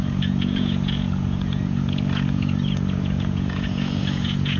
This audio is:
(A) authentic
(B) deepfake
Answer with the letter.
B